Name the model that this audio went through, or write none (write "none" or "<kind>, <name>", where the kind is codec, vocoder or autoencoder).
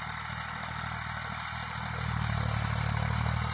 none